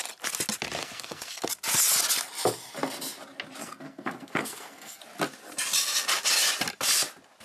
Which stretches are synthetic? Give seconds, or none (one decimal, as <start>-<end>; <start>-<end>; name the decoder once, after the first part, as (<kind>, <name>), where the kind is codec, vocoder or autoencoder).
0.8-1.5 (codec, SNAC); 3.6-5.0